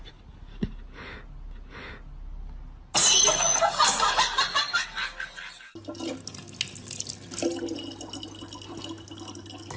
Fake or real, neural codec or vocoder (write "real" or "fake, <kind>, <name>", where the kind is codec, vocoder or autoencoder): real